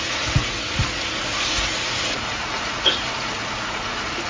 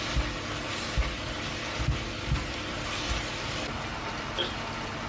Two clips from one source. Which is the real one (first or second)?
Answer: second